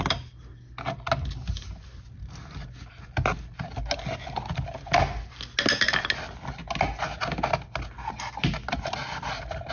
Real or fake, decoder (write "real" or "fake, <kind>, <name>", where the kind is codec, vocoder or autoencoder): real